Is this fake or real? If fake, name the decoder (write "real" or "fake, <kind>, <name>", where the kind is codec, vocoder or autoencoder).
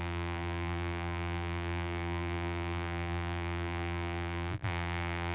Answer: fake, vocoder, BigVGAN v2